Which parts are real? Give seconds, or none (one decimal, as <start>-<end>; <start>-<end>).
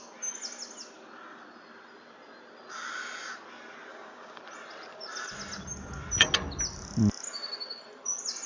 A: 0.0-3.9; 4.4-8.5